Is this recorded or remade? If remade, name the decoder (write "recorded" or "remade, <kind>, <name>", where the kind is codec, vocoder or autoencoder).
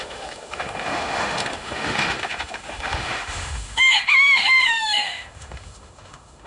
remade, autoencoder, DAC-VAE